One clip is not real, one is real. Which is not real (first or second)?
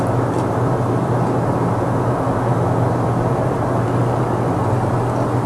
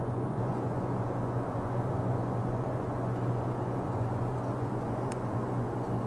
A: second